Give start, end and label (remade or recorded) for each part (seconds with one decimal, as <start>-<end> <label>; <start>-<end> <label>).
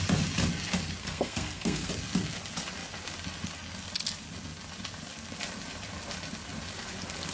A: 0.0-1.0 recorded; 1.0-1.9 remade; 1.9-7.3 recorded